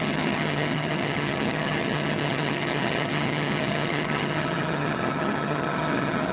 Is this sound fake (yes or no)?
yes